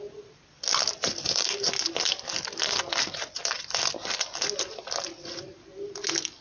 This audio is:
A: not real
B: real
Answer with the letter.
B